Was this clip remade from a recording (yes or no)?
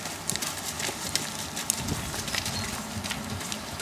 no